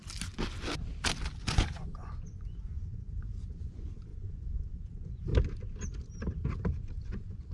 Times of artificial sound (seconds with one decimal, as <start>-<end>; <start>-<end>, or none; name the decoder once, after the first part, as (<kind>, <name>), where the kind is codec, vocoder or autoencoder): 1.4-5.3 (vocoder, Vocos); 6.9-7.5